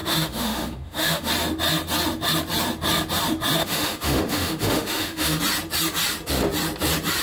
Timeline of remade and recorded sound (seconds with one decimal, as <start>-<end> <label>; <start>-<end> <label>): 0.0-1.3 remade; 1.3-3.6 recorded; 3.6-5.4 remade; 5.4-7.2 recorded